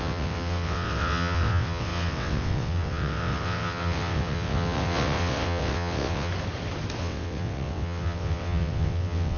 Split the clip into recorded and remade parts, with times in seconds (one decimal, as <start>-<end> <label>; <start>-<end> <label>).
0.0-6.3 remade; 6.3-7.0 recorded; 7.0-9.4 remade

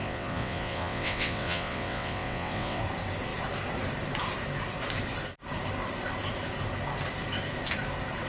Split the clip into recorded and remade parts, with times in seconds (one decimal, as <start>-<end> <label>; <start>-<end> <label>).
0.0-2.8 remade; 2.8-8.3 recorded

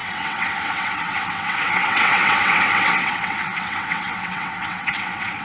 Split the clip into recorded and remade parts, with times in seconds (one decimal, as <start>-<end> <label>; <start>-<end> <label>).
0.0-5.4 remade